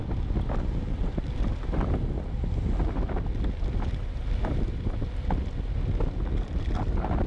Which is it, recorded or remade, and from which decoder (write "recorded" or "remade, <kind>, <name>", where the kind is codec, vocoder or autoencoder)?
recorded